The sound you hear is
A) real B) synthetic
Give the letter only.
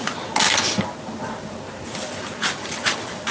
A